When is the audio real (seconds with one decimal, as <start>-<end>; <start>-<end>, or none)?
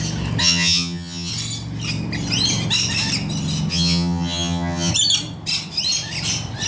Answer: 0.0-0.4; 1.3-3.7; 4.9-6.7